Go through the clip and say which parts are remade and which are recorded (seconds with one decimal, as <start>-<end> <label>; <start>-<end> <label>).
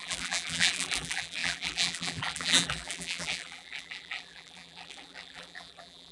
0.0-6.1 remade